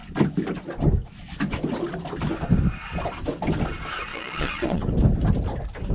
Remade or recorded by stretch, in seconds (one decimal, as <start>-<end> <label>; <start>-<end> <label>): 0.0-4.1 recorded; 4.1-4.8 remade; 4.8-5.9 recorded